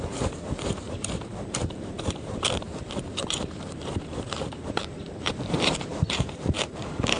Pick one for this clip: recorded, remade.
remade